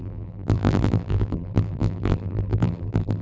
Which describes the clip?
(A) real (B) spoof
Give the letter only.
B